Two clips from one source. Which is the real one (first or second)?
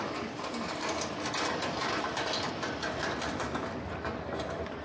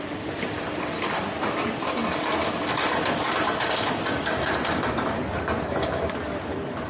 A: first